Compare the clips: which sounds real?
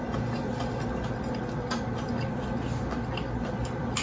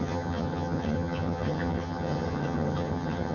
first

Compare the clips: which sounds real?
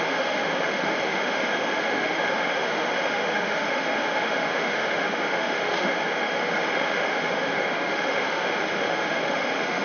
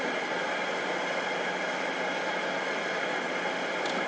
second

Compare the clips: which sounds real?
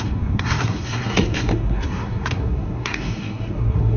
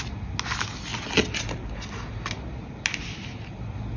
second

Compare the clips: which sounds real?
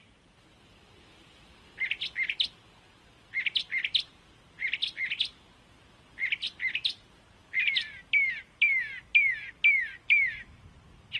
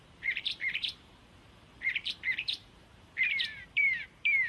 first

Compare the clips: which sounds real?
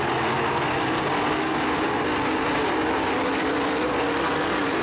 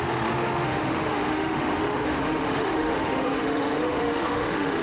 first